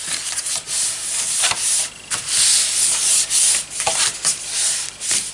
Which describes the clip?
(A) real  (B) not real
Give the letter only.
A